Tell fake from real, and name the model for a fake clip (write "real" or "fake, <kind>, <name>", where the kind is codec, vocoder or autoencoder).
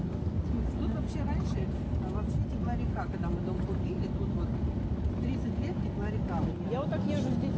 real